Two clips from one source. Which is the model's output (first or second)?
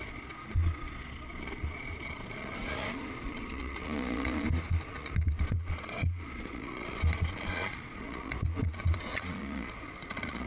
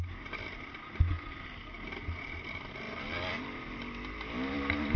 first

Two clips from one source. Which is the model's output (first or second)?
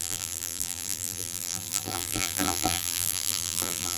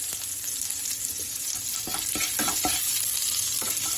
first